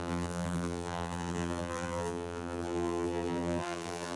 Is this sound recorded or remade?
remade